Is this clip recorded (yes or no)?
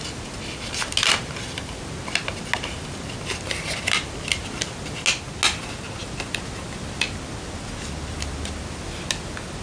yes